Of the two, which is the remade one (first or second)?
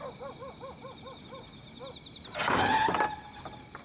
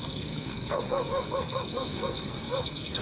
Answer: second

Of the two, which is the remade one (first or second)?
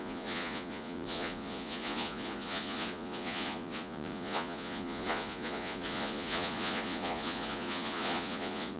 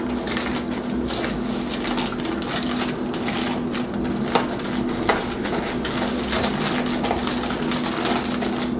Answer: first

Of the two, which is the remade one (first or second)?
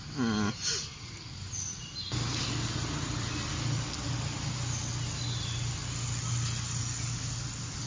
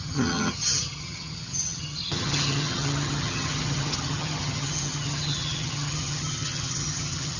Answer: second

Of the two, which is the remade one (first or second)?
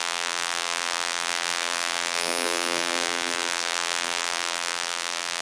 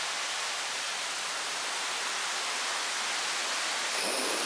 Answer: first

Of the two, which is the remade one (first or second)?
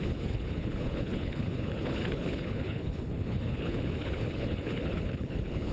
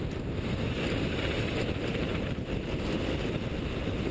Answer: first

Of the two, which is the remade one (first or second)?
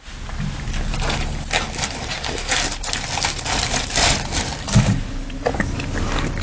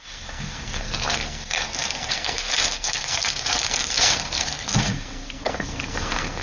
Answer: second